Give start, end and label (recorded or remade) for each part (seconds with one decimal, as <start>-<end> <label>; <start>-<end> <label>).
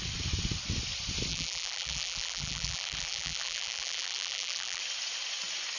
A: 0.0-1.3 recorded; 1.3-4.8 remade; 4.8-5.8 recorded